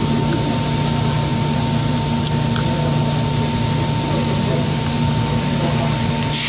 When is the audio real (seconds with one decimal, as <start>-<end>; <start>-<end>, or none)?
0.0-6.5